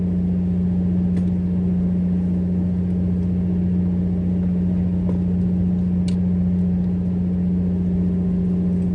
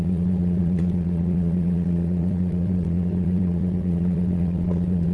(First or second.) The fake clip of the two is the second